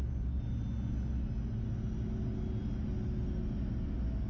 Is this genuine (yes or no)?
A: yes